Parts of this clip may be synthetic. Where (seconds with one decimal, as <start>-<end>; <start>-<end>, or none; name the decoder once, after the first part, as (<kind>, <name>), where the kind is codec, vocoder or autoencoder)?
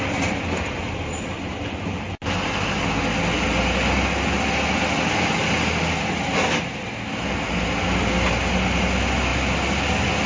none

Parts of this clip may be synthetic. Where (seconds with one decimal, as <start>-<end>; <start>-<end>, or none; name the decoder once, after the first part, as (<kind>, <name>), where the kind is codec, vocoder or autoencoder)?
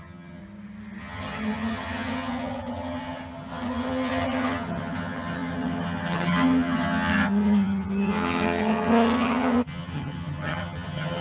0.0-0.4 (vocoder, HiFi-GAN); 1.0-11.2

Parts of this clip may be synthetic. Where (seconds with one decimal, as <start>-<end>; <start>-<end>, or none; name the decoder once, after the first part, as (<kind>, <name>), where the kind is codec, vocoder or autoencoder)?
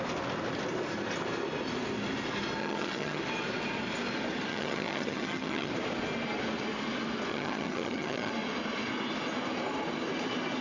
2.6-3.2 (vocoder, HiFi-GAN); 4.5-5.7; 7.3-8.3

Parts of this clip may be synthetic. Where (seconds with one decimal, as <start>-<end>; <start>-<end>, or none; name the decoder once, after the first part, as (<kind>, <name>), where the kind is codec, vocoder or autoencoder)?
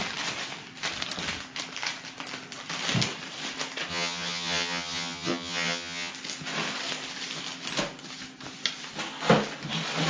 3.9-6.1 (vocoder, HiFi-GAN)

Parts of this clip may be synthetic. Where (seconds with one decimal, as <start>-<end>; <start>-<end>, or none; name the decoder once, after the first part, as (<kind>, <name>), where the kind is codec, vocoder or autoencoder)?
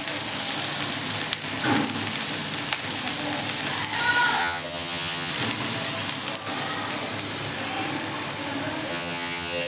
4.4-5.3 (vocoder, HiFi-GAN); 8.9-9.7